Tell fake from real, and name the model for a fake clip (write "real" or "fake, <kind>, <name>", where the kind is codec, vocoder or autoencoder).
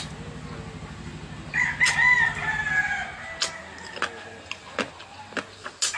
real